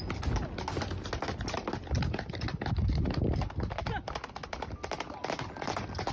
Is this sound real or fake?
real